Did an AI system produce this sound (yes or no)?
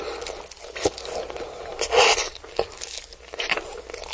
no